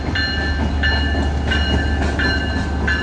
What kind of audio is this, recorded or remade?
recorded